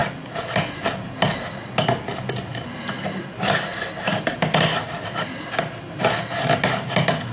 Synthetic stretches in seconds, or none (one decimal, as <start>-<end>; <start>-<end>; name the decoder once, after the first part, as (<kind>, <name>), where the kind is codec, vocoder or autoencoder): none